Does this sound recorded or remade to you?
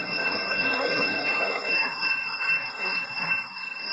remade